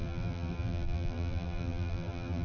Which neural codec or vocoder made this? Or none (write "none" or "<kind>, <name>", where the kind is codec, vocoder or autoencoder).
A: vocoder, BigVGAN v2